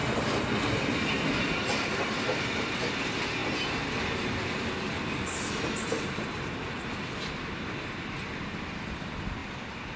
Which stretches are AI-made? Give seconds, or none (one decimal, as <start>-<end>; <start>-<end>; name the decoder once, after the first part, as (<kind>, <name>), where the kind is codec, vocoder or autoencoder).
1.5-3.4 (vocoder, BigVGAN v2); 6.0-10.0